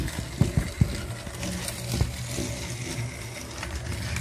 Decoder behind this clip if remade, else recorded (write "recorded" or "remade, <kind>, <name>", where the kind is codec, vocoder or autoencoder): remade, vocoder, BigVGAN v2